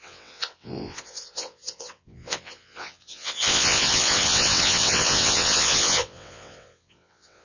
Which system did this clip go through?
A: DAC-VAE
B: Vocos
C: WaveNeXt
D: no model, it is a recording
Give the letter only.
C